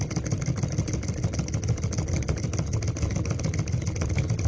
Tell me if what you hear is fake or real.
real